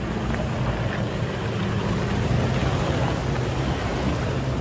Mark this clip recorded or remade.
recorded